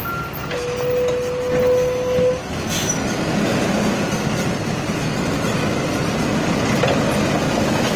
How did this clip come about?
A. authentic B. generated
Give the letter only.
A